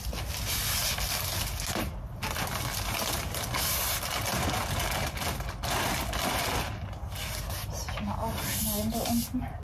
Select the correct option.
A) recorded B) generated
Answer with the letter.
A